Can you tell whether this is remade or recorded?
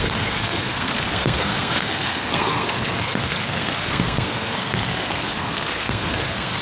remade